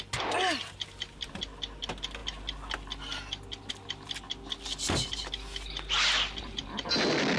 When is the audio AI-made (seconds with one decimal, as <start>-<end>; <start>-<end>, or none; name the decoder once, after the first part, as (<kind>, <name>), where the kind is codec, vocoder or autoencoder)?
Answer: none